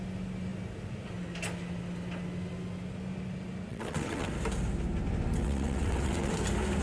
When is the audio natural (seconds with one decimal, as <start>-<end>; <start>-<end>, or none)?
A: 0.0-3.7; 4.3-5.4; 6.3-6.8

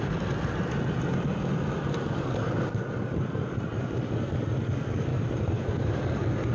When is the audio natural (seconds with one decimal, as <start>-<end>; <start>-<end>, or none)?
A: 0.0-5.1; 6.0-6.5

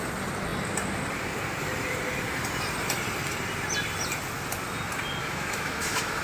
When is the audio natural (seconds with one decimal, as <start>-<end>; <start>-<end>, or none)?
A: 0.0-5.2